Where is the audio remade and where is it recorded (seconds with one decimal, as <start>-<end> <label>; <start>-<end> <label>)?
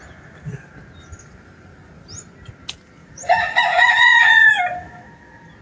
0.0-3.0 recorded; 3.0-4.6 remade; 4.6-5.6 recorded